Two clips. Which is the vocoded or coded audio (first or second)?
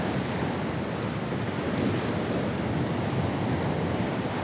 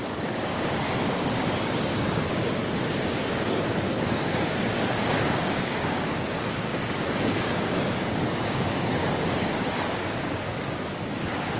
second